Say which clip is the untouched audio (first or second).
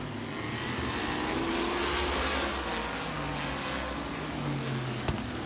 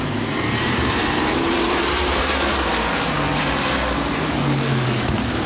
first